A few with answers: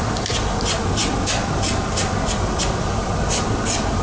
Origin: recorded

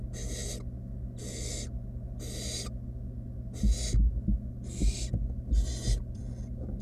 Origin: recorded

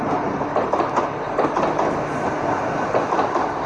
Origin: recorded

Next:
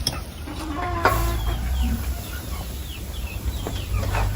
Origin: remade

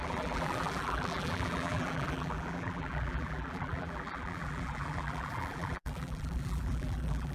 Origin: remade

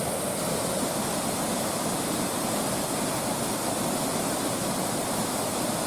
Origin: recorded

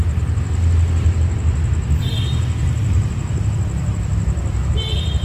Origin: recorded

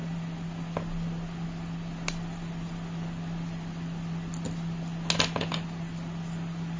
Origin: recorded